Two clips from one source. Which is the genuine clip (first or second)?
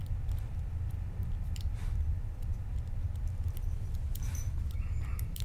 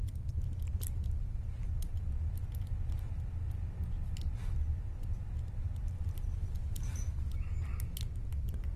second